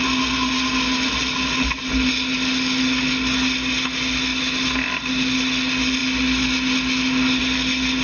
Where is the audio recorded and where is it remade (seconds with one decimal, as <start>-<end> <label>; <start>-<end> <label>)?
0.0-8.0 recorded